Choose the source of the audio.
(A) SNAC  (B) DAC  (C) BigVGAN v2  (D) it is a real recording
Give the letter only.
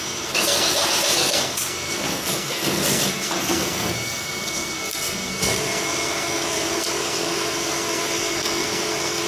A